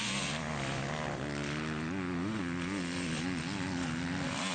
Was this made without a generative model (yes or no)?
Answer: yes